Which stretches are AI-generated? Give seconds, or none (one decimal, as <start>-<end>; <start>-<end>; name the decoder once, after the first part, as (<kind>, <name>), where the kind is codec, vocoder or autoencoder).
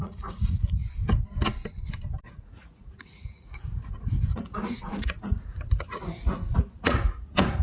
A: 0.0-0.8 (vocoder, Vocos); 2.3-7.6